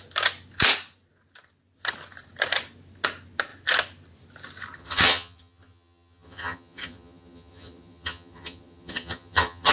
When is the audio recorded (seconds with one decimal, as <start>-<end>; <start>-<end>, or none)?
0.0-4.8